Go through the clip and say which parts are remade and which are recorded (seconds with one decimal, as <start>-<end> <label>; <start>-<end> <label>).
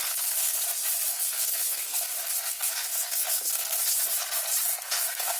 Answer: 0.0-0.6 remade; 0.6-1.1 recorded; 1.1-3.8 remade; 3.8-4.7 recorded; 4.7-5.4 remade